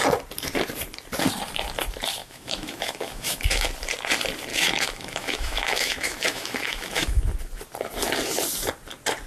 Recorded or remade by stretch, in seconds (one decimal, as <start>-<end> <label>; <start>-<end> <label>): 0.0-2.2 recorded; 2.2-3.7 remade; 3.7-4.5 recorded; 4.5-7.2 remade; 7.2-9.3 recorded